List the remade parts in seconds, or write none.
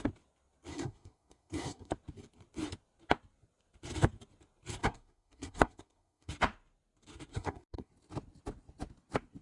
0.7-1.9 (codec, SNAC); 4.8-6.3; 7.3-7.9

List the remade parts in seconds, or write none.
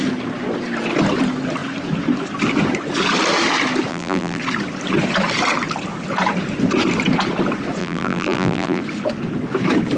3.9-4.4 (vocoder, BigVGAN v2); 7.8-8.8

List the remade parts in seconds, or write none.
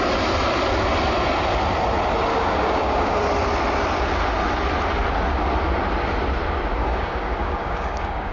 2.3-3.2 (codec, DAC); 6.8-8.3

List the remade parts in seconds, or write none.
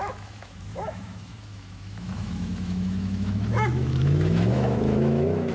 0.0-5.5 (autoencoder, DAC-VAE)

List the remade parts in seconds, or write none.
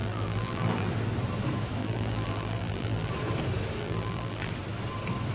0.0-0.9 (vocoder, BigVGAN v2); 1.8-3.1; 3.8-4.5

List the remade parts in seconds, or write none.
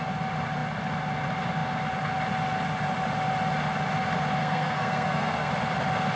4.4-5.5 (codec, SNAC)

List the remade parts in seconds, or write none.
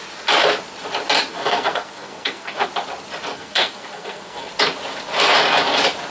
1.3-2.7 (codec, SNAC); 3.3-4.5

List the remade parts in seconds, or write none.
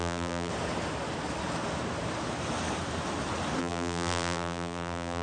0.0-0.5 (vocoder, BigVGAN v2); 3.6-5.2